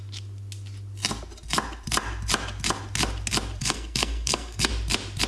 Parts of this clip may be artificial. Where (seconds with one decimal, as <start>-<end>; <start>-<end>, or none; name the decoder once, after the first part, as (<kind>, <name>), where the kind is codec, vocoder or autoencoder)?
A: 3.6-4.7 (codec, SNAC)

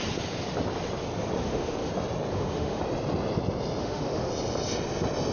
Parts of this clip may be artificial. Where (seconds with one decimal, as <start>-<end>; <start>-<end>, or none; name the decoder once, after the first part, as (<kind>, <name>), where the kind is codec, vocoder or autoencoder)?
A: 1.4-1.9 (autoencoder, DAC-VAE); 2.3-2.8; 3.8-4.3

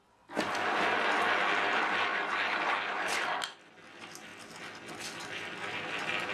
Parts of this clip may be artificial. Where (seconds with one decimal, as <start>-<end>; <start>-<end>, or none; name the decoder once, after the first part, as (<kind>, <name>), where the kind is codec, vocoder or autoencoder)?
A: none

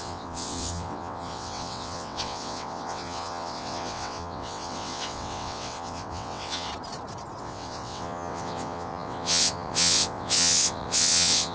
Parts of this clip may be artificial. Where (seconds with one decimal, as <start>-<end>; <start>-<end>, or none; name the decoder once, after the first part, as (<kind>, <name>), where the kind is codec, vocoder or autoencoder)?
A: 0.0-6.7 (vocoder, WaveNeXt); 7.4-11.5

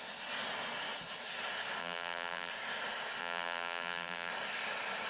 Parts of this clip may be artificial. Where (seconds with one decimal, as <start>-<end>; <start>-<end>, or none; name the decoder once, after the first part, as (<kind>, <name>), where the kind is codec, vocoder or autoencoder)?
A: 1.8-2.5 (vocoder, BigVGAN v2); 3.2-4.3

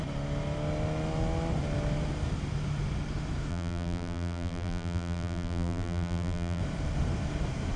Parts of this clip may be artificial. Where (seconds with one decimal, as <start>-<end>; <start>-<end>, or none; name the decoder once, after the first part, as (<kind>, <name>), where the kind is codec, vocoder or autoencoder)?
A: 3.5-6.6 (vocoder, BigVGAN v2)

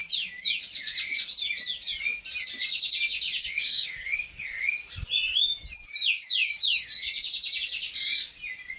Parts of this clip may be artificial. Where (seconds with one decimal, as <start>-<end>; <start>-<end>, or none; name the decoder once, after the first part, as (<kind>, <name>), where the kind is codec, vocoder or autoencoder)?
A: 3.4-4.7 (codec, DAC); 6.4-7.0